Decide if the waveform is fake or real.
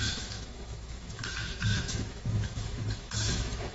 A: fake